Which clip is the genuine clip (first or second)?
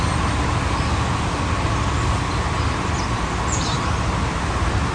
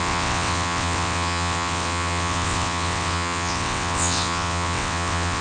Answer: first